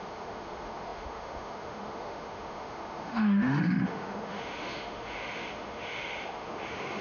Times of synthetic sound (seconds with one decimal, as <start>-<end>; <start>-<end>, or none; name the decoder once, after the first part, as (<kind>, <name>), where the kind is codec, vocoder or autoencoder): 0.0-7.0 (autoencoder, DAC-VAE)

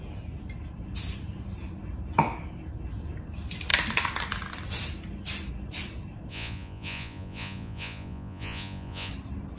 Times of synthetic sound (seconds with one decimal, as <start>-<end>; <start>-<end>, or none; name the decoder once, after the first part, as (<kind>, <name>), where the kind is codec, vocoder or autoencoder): 6.3-9.1 (vocoder, Vocos)